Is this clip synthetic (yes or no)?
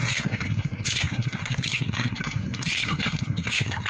yes